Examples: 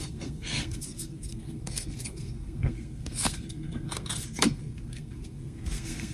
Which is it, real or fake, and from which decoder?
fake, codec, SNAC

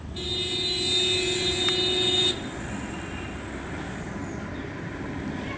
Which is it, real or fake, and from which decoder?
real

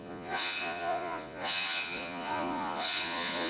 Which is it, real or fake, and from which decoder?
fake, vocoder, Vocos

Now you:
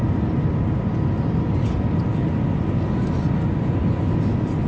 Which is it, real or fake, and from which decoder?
real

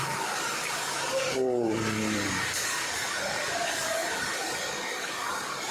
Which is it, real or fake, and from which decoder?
fake, codec, DAC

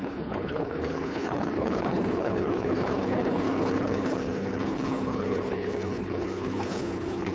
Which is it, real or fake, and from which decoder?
fake, codec, HILCodec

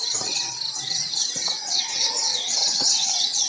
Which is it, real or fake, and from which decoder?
fake, vocoder, WaveNeXt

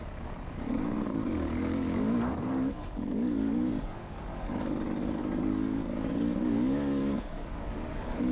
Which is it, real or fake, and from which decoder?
fake, codec, DAC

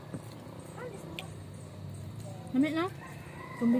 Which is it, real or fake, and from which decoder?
real